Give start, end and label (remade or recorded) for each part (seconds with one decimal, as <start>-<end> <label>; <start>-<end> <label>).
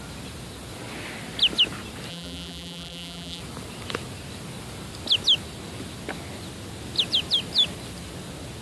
0.0-2.1 recorded; 2.1-3.4 remade; 3.4-8.6 recorded